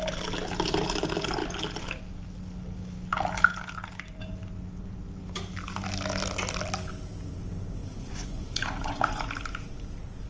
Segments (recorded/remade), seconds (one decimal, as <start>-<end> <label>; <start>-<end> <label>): 0.0-7.8 recorded; 7.8-9.2 remade; 9.2-10.3 recorded